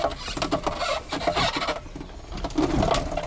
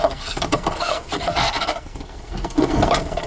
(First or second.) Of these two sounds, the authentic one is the first